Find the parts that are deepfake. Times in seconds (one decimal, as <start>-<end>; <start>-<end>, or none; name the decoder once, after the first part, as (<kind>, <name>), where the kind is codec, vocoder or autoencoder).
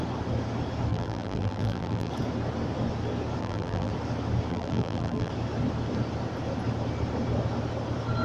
0.9-2.1 (vocoder, BigVGAN v2); 3.4-3.9; 4.5-5.3